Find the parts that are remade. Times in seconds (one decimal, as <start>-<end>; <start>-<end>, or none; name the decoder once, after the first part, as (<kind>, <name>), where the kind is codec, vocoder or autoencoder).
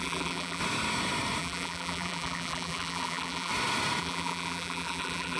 0.0-0.6 (vocoder, BigVGAN v2); 1.4-3.5; 4.0-5.4